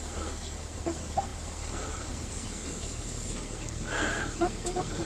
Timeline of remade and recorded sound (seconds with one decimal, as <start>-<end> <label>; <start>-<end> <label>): 0.0-5.0 remade